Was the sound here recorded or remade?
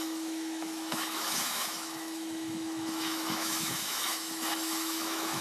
remade